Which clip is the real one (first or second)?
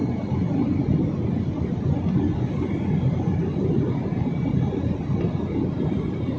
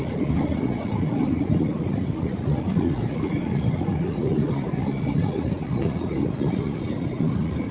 first